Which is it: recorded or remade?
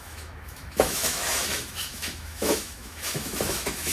remade